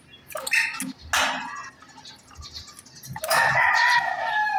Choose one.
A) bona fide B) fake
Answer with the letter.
A